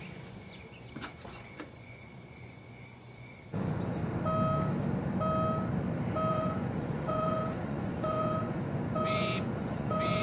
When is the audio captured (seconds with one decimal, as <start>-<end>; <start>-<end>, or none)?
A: 4.0-6.3